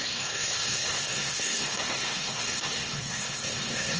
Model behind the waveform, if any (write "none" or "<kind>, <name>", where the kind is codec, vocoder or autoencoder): codec, SNAC